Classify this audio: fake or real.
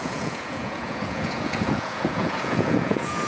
fake